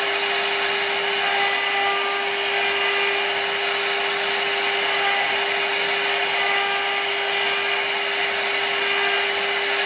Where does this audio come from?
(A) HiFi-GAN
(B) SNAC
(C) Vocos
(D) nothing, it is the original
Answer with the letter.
D